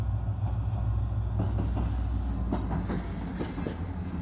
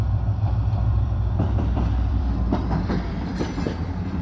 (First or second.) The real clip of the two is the first